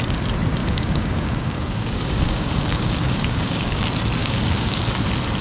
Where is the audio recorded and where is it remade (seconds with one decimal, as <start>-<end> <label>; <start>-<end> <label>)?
0.0-0.6 recorded; 0.6-3.8 remade; 3.8-4.2 recorded; 4.2-4.8 remade; 4.8-5.4 recorded